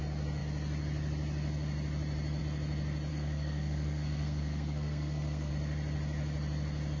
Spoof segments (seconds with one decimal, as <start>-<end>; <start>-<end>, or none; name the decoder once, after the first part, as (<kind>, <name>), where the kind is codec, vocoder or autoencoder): 3.1-5.5 (codec, SNAC)